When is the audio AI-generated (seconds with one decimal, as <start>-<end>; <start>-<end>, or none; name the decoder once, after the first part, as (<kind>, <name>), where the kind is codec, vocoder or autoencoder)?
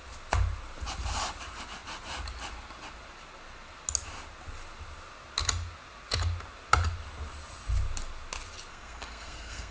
8.7-9.7 (codec, SNAC)